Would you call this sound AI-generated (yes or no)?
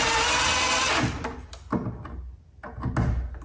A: no